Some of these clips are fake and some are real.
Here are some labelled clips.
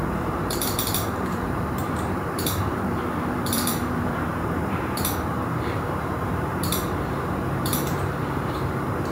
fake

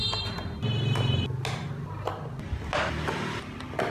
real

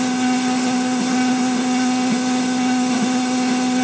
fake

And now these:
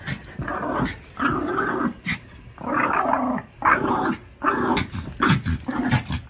real